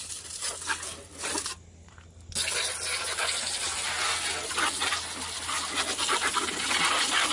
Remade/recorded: recorded